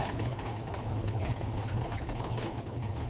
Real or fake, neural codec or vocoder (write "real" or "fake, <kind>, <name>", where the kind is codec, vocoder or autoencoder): fake, codec, HILCodec